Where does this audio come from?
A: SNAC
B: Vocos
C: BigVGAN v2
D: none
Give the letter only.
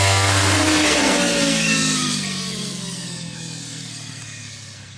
A